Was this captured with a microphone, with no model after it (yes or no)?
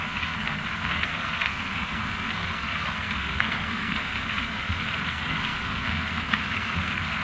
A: no